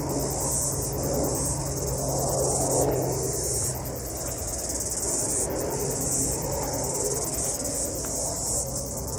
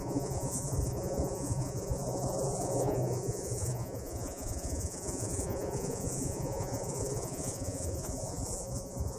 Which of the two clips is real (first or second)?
first